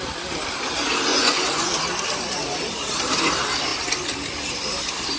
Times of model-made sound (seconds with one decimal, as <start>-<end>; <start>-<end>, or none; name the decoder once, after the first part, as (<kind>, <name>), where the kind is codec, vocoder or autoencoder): 1.1-1.7 (vocoder, Vocos)